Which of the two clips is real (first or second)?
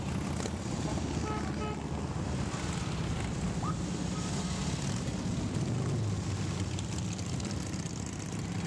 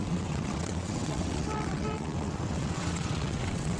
first